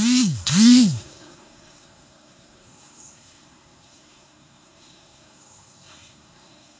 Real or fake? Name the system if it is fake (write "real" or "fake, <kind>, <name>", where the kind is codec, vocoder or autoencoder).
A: fake, codec, SNAC